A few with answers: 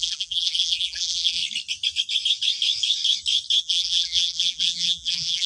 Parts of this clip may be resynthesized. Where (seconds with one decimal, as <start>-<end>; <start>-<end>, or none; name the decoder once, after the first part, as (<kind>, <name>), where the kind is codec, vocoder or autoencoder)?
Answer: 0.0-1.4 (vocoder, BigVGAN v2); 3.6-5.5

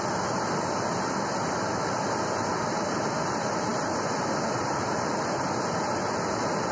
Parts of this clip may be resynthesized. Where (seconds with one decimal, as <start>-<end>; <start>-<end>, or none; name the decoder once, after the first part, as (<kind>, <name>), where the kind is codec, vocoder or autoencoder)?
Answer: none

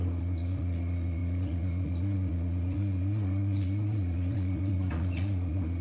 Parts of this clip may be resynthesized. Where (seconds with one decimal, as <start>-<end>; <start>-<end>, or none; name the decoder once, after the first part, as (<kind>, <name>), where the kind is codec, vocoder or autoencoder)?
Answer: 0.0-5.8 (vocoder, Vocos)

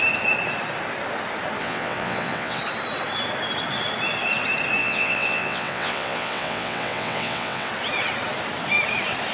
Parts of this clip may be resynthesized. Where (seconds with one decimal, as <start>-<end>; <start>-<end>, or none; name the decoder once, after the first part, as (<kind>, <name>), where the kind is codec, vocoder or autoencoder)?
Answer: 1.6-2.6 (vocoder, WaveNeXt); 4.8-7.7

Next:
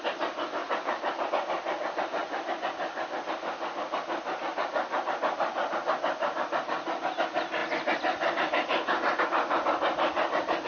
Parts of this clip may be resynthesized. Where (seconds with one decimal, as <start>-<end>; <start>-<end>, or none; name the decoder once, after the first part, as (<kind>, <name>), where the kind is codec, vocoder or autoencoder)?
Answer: 0.6-1.3 (vocoder, BigVGAN v2)

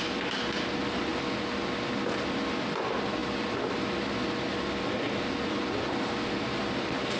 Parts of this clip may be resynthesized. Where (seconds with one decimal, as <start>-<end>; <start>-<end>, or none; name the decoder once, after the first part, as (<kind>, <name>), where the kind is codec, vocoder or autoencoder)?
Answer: none

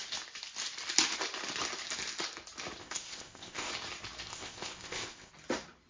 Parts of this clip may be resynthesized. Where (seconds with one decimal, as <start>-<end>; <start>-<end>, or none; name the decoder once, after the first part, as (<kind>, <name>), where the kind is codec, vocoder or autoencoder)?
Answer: 2.8-3.7 (codec, ZipCodec); 4.3-5.3